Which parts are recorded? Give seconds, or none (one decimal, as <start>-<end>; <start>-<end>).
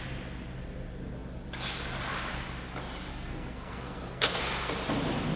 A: 0.0-3.1; 4.7-5.4